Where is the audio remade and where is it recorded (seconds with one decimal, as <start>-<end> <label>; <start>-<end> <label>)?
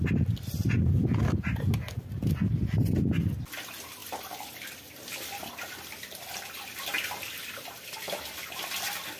0.0-9.2 recorded